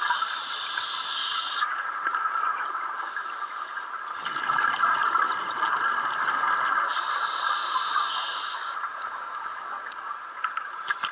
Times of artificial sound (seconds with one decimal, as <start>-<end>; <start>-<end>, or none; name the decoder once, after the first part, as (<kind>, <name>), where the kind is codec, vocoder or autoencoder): 1.2-2.7 (vocoder, Vocos); 9.8-10.4